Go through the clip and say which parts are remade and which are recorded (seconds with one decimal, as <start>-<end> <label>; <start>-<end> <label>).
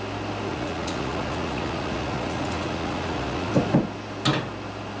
0.0-0.5 recorded; 0.5-3.5 remade; 3.5-5.0 recorded